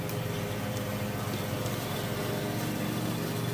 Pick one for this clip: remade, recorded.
remade